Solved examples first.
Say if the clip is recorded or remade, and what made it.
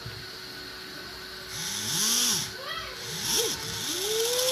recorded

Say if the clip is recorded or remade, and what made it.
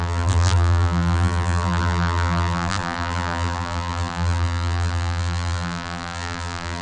remade, vocoder, BigVGAN v2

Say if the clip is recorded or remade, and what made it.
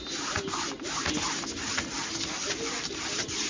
recorded